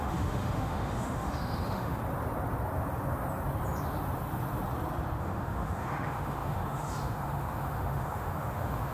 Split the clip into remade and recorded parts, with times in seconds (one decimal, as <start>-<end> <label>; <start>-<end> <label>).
0.0-2.0 remade; 2.0-5.2 recorded; 5.2-8.9 remade